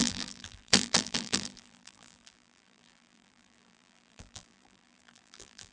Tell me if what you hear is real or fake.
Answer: fake